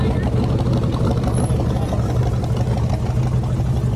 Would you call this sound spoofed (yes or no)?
no